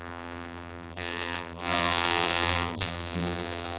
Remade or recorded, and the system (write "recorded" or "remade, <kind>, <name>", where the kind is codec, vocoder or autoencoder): remade, vocoder, BigVGAN v2